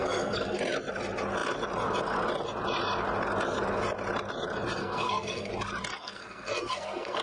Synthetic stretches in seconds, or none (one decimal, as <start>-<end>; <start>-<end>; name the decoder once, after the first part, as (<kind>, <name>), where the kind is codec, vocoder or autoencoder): 0.0-0.6 (codec, SNAC); 4.8-5.5; 5.9-7.2